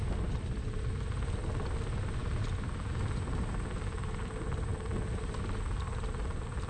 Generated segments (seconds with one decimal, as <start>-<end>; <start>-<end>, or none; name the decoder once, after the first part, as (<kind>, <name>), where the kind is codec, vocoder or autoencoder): none